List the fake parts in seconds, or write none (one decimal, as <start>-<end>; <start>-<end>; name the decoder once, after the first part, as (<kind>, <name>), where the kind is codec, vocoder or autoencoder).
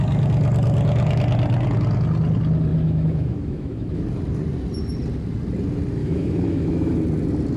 2.7-4.0 (autoencoder, DAC-VAE); 6.0-7.0